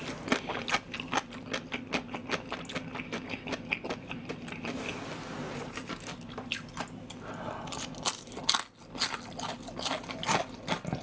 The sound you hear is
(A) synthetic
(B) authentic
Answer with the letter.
B